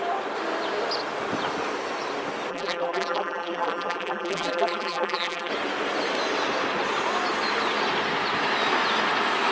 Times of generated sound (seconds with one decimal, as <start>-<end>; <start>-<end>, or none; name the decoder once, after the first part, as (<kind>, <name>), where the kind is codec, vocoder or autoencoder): 2.5-5.5 (vocoder, BigVGAN v2)